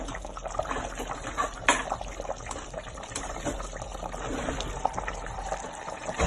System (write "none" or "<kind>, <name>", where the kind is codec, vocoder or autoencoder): none